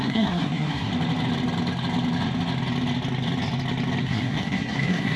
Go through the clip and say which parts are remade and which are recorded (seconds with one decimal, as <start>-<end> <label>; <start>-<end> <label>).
0.0-0.9 remade; 0.9-4.0 recorded; 4.0-5.2 remade

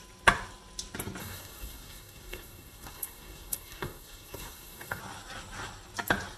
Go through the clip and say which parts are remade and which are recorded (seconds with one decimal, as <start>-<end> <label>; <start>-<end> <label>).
0.0-1.2 recorded; 1.2-5.0 remade; 5.0-6.4 recorded

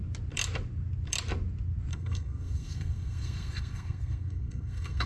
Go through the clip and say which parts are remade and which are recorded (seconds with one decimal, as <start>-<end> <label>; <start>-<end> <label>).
0.0-1.9 recorded; 1.9-5.1 remade

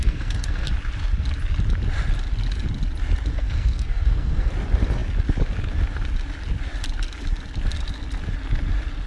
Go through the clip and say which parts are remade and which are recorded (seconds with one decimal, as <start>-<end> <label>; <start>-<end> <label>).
0.0-0.7 remade; 0.7-3.3 recorded; 3.3-4.5 remade; 4.5-9.1 recorded

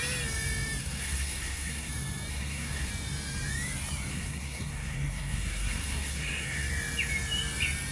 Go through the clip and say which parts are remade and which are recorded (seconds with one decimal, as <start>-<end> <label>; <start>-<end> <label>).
0.0-0.8 recorded; 0.8-1.9 remade; 1.9-2.3 recorded; 2.3-2.9 remade; 2.9-4.1 recorded; 4.1-6.7 remade; 6.7-7.9 recorded

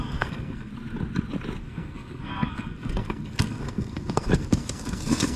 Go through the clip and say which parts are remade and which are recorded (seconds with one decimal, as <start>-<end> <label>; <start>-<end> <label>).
0.0-0.7 remade; 0.7-1.6 recorded; 1.6-5.4 remade

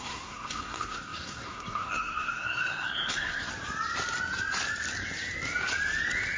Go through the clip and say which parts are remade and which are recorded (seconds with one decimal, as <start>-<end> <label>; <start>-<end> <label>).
0.0-3.5 remade; 3.5-6.4 recorded